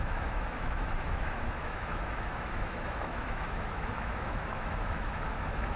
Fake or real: fake